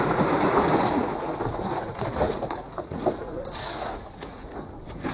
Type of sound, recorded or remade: remade